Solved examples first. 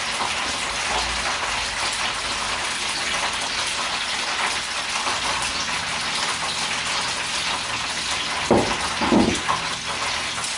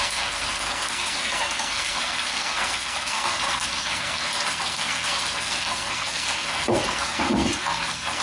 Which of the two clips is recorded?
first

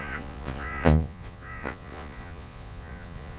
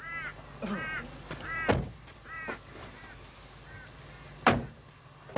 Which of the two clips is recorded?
second